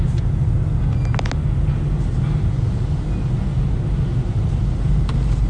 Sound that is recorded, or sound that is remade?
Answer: recorded